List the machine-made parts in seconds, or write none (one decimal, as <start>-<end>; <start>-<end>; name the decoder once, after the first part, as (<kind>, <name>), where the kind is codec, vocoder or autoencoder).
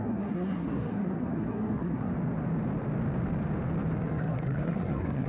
0.0-2.1 (codec, SNAC); 4.1-5.3